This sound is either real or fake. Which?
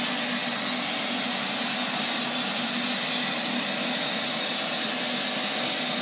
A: real